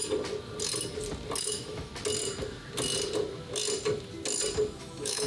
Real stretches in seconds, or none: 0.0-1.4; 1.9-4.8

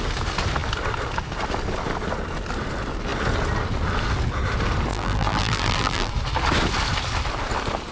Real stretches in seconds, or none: 0.0-4.9; 6.1-7.9

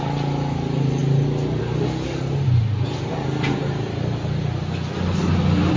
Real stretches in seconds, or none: 0.0-5.8